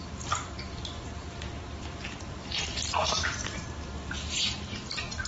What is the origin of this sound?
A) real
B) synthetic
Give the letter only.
B